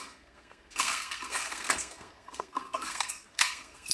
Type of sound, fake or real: fake